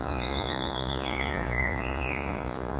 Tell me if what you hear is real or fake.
fake